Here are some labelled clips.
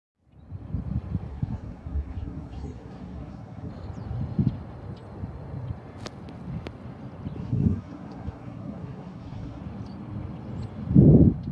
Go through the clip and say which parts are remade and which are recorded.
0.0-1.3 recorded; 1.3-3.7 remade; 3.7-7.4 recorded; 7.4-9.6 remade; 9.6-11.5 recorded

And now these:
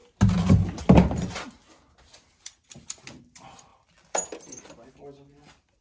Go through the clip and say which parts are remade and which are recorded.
0.0-5.8 recorded

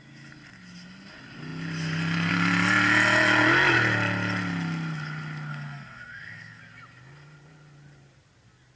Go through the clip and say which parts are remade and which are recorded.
0.0-5.5 recorded; 5.5-6.6 remade; 6.6-8.8 recorded

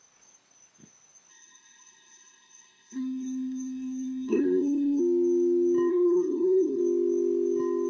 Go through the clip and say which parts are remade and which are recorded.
0.0-1.3 recorded; 1.3-5.0 remade; 5.0-5.9 recorded; 5.9-6.8 remade; 6.8-7.9 recorded

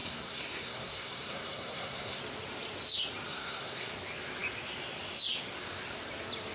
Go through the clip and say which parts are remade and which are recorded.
0.0-2.2 remade; 2.2-3.3 recorded; 3.3-3.9 remade; 3.9-6.5 recorded

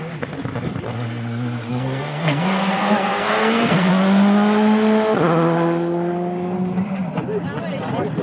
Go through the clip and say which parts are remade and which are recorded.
0.0-1.7 recorded; 1.7-3.9 remade; 3.9-8.2 recorded

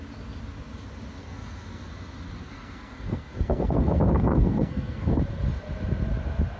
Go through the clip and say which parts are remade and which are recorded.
0.0-1.2 recorded; 1.2-1.9 remade; 1.9-2.4 recorded; 2.4-5.2 remade; 5.2-6.6 recorded